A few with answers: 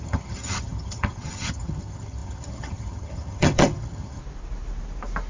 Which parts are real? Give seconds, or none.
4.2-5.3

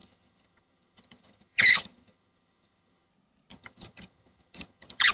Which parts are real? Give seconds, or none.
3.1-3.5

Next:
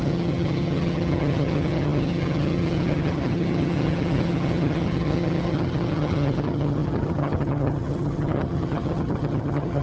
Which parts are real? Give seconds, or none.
none

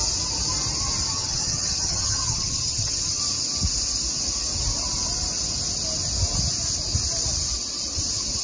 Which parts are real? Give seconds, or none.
0.0-1.1; 3.2-8.4

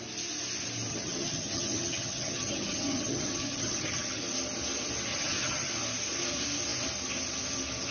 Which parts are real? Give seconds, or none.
0.0-0.9; 4.2-5.1; 5.7-7.9